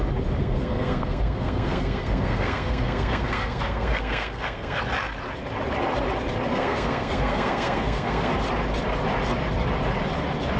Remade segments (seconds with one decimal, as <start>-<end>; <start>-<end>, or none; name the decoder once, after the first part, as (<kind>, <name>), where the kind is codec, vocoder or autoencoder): 0.4-4.8 (codec, SNAC); 6.5-8.3